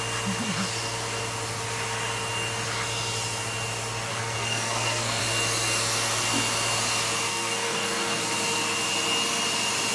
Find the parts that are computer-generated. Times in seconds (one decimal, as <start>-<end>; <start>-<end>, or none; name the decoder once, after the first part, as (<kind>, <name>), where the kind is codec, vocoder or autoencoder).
4.1-5.2 (codec, SNAC); 7.3-8.2